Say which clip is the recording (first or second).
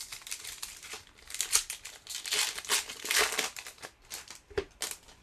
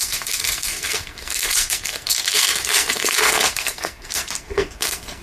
first